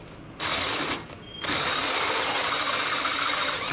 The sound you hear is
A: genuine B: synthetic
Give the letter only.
A